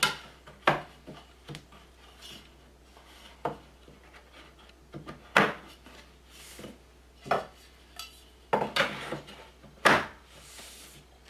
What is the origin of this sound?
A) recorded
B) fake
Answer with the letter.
A